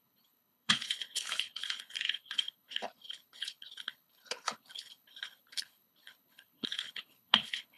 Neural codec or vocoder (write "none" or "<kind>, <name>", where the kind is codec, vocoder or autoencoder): codec, HILCodec